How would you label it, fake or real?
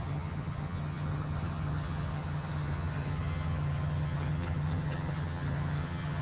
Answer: fake